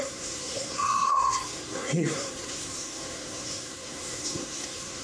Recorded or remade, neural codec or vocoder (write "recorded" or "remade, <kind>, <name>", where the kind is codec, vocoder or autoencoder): remade, codec, SNAC